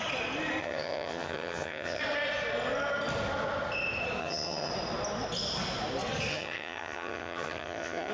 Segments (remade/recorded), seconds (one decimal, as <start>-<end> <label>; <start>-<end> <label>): 0.0-0.6 recorded; 0.6-2.0 remade; 2.0-4.2 recorded; 4.2-4.7 remade; 4.7-6.3 recorded; 6.3-8.1 remade